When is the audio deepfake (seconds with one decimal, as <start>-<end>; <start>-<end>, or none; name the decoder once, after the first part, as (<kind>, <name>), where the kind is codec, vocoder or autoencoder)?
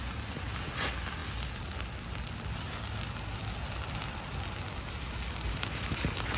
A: 5.5-6.0 (autoencoder, DAC-VAE)